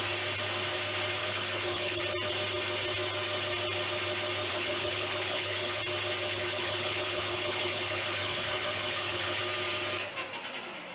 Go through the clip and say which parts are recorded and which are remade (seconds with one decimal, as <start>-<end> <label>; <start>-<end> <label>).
0.0-1.2 recorded; 1.2-2.0 remade; 2.0-4.5 recorded; 4.5-5.8 remade; 5.8-6.2 recorded; 6.2-9.4 remade; 9.4-10.9 recorded